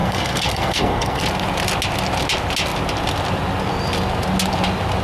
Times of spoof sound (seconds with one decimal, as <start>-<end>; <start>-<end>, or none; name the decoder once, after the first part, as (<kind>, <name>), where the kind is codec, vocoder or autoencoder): 0.0-1.2 (codec, SNAC)